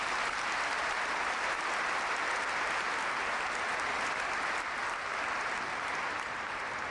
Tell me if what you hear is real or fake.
real